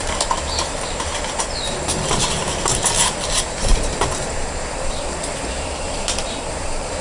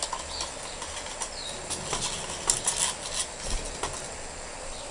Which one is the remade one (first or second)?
first